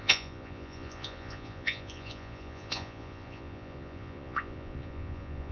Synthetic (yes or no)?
yes